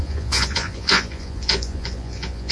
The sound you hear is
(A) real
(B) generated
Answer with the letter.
B